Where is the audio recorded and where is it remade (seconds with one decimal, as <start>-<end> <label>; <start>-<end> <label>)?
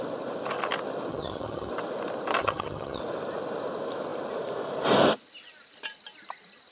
0.0-1.1 recorded; 1.1-1.7 remade; 1.7-2.4 recorded; 2.4-3.0 remade; 3.0-6.7 recorded